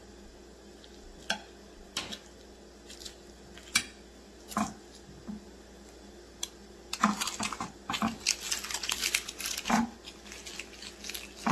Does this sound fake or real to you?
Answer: real